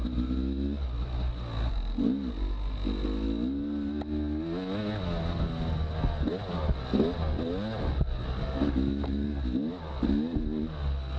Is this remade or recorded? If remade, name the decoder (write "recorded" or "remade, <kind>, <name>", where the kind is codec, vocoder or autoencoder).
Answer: recorded